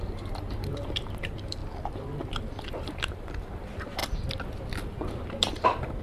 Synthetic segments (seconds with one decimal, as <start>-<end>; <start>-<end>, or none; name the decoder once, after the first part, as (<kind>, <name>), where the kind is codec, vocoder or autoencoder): 0.0-1.6 (vocoder, BigVGAN v2); 2.7-4.0; 5.3-6.0